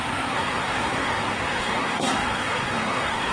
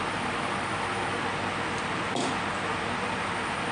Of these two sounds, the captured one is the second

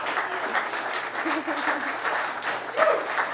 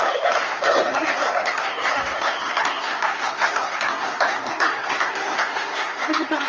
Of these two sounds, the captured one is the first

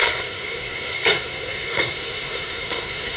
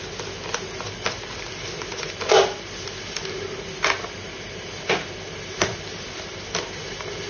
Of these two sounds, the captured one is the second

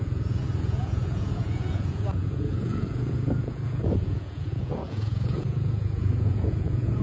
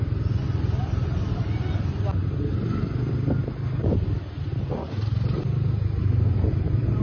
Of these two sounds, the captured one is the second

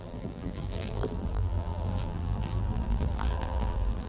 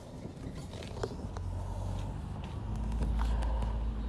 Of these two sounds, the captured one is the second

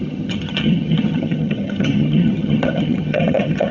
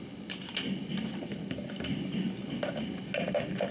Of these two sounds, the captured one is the second